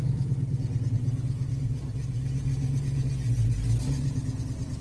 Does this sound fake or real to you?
real